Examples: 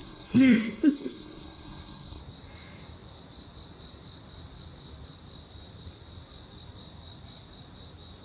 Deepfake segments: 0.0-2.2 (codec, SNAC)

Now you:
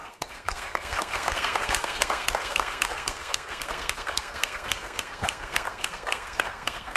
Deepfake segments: 0.0-7.0 (codec, SNAC)

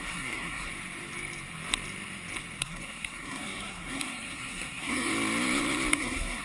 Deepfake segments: 0.0-0.7 (codec, SNAC); 2.6-5.1; 5.9-6.4

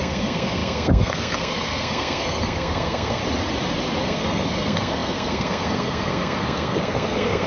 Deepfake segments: 0.0-3.2 (codec, SNAC); 4.0-7.5

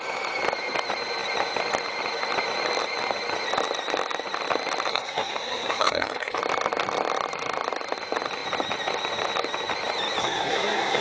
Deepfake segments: 4.9-6.4 (codec, SNAC); 10.2-11.0

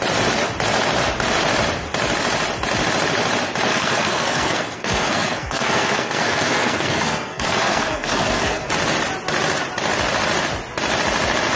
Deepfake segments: 3.7-8.7 (codec, SNAC)